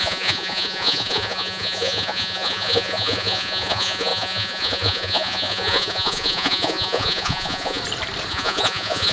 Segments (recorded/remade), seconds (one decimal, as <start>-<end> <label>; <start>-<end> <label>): 0.0-7.8 remade; 7.8-8.3 recorded; 8.3-9.1 remade